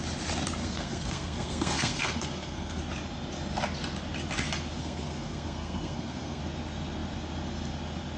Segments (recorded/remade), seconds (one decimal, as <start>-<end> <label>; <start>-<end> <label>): 0.0-0.6 recorded; 0.6-2.8 remade; 2.8-4.8 recorded; 4.8-6.4 remade; 6.4-8.2 recorded